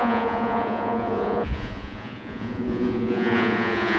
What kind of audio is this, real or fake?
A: fake